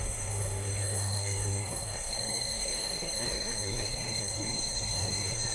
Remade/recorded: remade